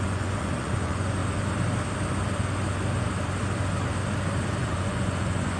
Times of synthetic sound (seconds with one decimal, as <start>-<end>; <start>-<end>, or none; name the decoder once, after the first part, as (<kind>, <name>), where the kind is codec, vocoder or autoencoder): 0.0-1.2 (vocoder, Vocos); 4.6-5.6